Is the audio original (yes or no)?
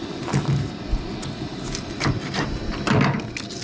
yes